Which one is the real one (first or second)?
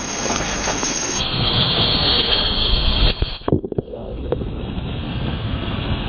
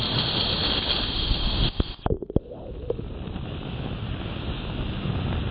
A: second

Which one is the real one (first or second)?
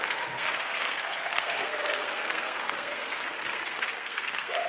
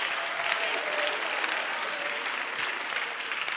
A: second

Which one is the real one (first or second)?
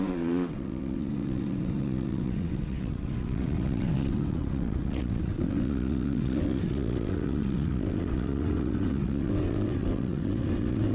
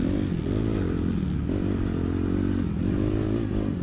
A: second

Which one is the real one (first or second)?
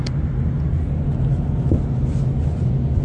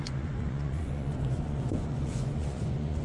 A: first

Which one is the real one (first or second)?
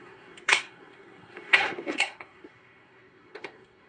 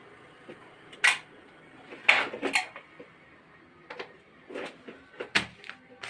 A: second